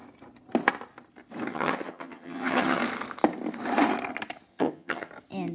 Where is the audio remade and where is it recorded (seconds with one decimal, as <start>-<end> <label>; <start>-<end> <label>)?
0.0-1.5 recorded; 1.5-2.8 remade; 2.8-4.5 recorded; 4.5-5.1 remade; 5.1-5.5 recorded